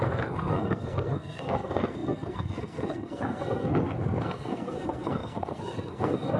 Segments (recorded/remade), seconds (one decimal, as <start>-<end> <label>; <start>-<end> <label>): 0.0-6.4 remade